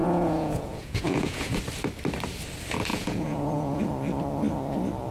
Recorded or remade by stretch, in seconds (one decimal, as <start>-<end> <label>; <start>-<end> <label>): 0.0-1.6 remade; 1.6-2.9 recorded; 2.9-3.8 remade; 3.8-5.1 recorded